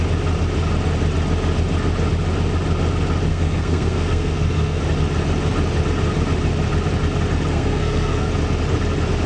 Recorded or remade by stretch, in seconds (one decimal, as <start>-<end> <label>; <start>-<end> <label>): 0.0-3.3 recorded; 3.3-4.8 remade; 4.8-7.5 recorded; 7.5-8.3 remade; 8.3-9.3 recorded